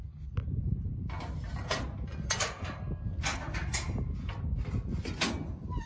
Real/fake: real